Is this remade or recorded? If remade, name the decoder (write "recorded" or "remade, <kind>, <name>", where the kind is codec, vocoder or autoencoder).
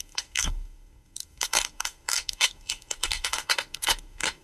remade, codec, SNAC